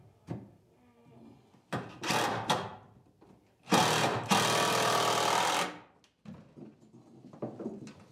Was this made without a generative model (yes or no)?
yes